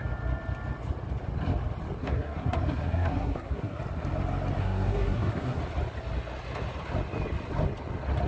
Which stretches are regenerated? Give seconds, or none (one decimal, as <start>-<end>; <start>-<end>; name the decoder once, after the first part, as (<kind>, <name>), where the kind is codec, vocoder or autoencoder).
2.0-3.8 (codec, SNAC); 4.6-5.6